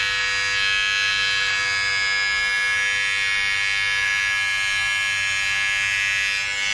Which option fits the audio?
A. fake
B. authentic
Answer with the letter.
B